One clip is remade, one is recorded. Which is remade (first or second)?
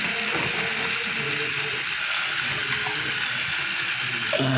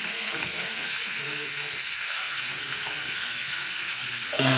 second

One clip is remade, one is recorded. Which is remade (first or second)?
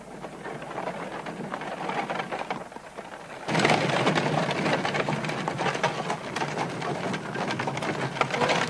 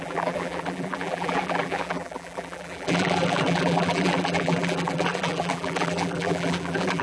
second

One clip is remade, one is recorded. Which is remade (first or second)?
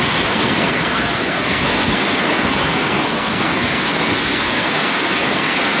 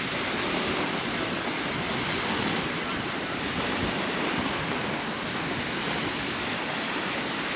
first